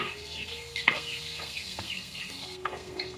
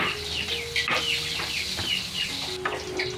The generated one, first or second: first